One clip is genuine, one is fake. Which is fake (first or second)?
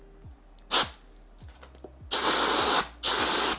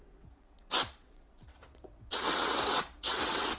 second